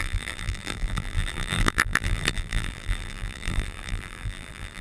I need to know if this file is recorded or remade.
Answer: remade